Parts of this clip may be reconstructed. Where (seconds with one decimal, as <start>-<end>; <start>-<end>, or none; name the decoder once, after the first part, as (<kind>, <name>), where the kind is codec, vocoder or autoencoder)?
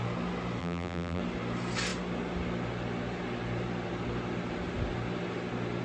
0.6-1.2 (vocoder, BigVGAN v2)